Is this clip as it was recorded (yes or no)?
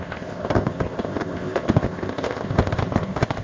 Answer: no